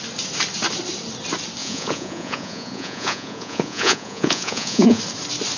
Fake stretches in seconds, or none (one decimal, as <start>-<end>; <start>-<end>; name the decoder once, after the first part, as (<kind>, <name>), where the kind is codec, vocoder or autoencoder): 1.6-5.0 (vocoder, Vocos)